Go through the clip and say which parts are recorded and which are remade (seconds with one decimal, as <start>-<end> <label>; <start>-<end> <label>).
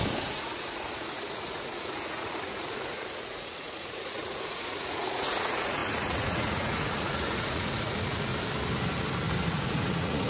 0.0-8.3 remade; 8.3-9.5 recorded; 9.5-10.3 remade